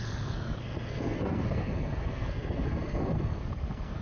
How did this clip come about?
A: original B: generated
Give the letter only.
B